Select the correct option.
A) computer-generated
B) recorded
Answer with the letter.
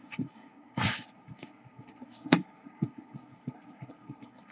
A